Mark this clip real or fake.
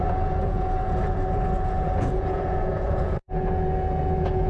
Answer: fake